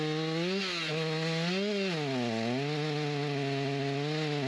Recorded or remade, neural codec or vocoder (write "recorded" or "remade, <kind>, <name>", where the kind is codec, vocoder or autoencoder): recorded